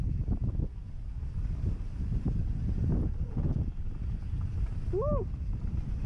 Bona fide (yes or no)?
yes